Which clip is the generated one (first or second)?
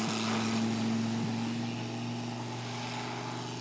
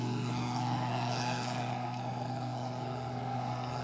second